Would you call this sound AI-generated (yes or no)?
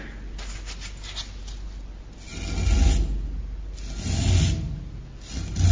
no